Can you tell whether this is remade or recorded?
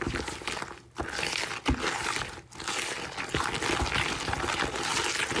recorded